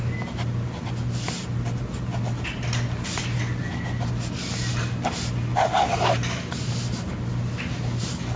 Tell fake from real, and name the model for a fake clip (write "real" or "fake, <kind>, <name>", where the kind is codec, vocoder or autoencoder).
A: real